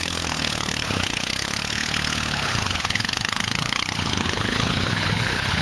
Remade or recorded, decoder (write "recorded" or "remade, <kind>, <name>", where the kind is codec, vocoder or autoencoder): remade, codec, HILCodec